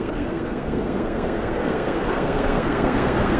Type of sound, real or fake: fake